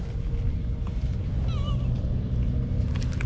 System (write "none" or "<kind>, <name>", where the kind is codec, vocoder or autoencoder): none